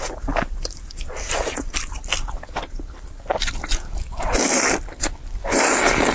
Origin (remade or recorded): recorded